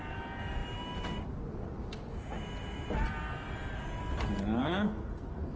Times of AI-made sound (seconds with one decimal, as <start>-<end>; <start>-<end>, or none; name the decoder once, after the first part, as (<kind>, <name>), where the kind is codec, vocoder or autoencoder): 4.6-5.6 (codec, SNAC)